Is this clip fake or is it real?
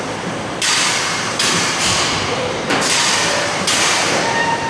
fake